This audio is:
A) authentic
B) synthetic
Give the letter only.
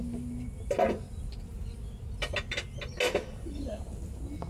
A